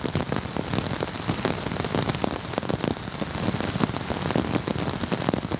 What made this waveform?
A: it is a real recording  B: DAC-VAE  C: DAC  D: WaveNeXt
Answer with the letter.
A